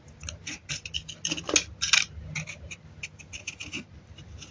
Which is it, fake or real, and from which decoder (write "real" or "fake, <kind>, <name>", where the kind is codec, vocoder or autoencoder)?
real